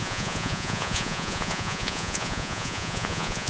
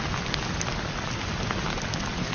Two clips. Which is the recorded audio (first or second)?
second